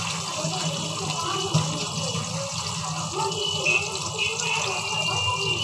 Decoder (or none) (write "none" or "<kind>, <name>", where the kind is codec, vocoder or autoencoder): none